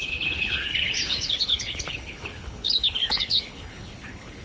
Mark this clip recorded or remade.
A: remade